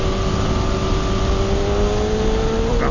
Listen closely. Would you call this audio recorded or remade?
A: recorded